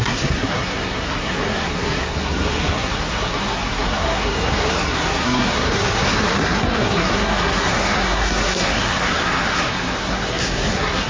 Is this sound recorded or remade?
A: remade